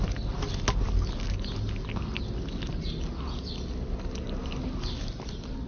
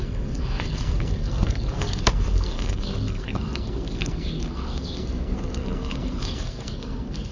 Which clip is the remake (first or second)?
second